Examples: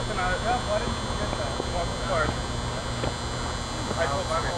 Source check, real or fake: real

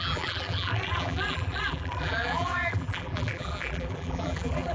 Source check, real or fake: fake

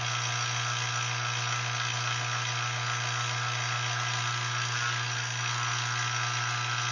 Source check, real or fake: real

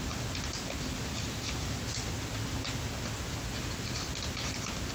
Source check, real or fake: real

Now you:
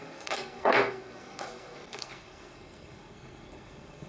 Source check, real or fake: fake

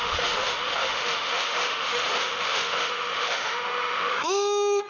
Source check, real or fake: fake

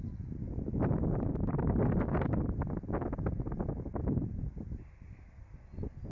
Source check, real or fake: real